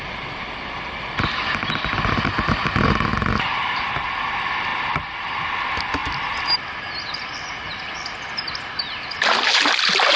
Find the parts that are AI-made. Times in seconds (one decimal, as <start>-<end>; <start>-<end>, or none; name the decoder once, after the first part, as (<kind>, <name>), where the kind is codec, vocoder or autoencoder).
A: none